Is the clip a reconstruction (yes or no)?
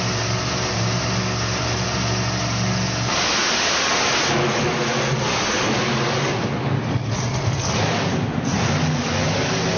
no